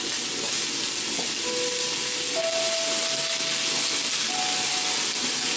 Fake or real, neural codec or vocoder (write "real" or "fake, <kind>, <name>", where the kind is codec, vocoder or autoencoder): real